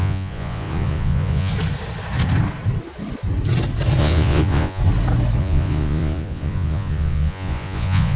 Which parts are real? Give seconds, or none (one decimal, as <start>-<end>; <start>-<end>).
1.5-4.0; 4.8-5.4